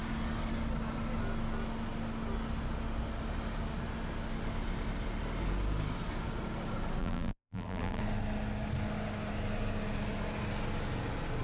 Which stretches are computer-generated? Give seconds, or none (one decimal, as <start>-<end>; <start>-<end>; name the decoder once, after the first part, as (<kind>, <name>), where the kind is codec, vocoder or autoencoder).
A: 7.0-8.0 (vocoder, BigVGAN v2)